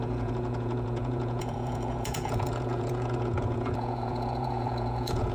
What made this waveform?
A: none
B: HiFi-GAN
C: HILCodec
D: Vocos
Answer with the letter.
D